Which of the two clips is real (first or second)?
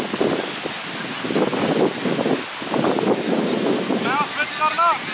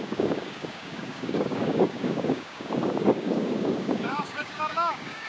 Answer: first